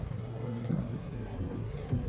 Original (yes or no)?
no